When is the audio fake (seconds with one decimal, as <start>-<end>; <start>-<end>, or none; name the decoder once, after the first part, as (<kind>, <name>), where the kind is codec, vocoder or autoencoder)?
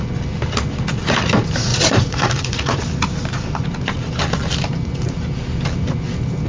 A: 1.7-2.8 (vocoder, Vocos)